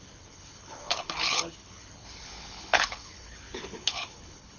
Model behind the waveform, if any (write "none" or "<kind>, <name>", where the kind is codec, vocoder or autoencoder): codec, HILCodec